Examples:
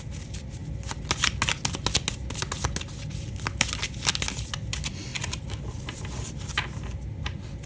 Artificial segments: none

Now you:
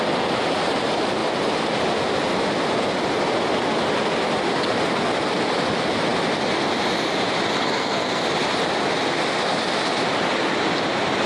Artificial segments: 7.6-8.2 (codec, SNAC)

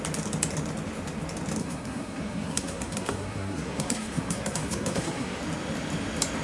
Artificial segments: 1.6-5.4 (codec, SNAC)

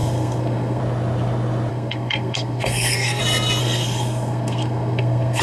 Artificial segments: 0.0-0.8 (codec, SNAC); 1.7-3.2; 3.6-5.4

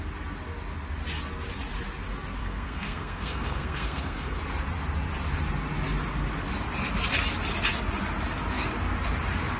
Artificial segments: 2.4-4.4 (codec, SNAC)

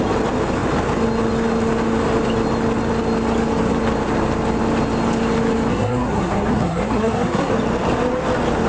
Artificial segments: 5.7-7.5 (codec, SNAC)

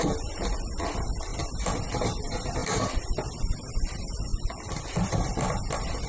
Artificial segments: 2.6-3.9 (vocoder, BigVGAN v2); 4.3-4.9